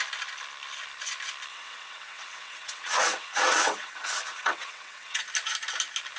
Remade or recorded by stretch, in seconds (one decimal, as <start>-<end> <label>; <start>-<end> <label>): 0.0-1.5 recorded; 1.5-5.2 remade; 5.2-6.2 recorded